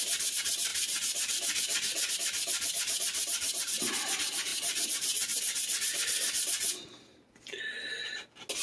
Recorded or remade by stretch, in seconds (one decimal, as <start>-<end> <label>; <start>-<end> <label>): 0.0-8.6 recorded